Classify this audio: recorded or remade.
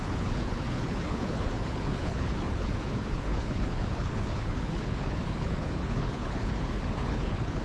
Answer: remade